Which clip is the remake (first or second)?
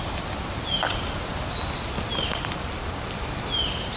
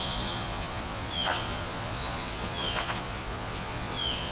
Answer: second